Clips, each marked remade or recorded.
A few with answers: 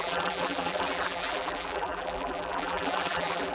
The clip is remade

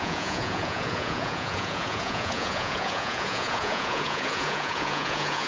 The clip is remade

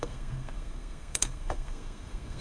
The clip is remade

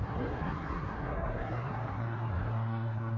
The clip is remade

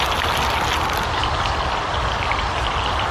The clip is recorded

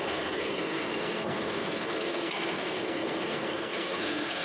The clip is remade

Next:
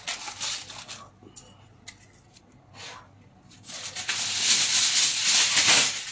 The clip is recorded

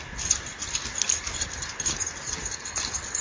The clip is recorded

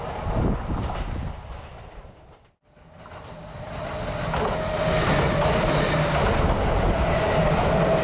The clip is recorded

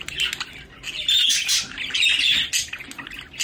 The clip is recorded